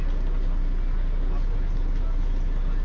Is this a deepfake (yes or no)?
no